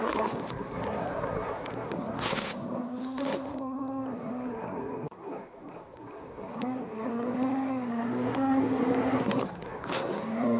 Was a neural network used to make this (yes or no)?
yes